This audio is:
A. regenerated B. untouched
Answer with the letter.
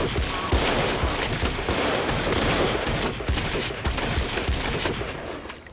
B